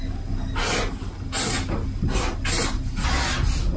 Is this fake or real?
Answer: real